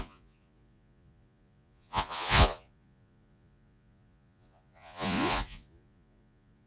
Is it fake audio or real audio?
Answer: fake